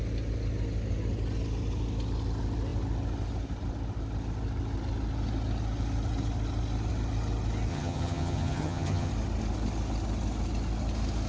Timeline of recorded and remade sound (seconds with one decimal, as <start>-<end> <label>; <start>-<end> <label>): 0.0-7.7 recorded; 7.7-9.1 remade; 9.1-11.3 recorded